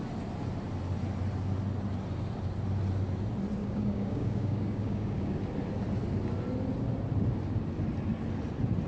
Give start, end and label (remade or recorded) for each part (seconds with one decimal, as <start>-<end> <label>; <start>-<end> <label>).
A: 0.0-3.6 recorded; 3.6-5.4 remade; 5.4-8.9 recorded